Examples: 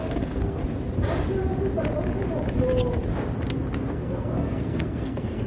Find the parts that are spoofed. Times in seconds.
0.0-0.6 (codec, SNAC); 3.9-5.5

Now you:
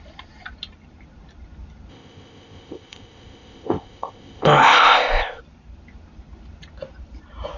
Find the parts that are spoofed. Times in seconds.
1.9-5.4 (codec, ZipCodec)

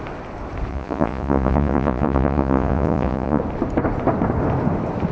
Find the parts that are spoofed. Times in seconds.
0.7-3.4 (vocoder, Vocos)